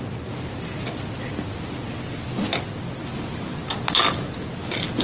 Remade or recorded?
recorded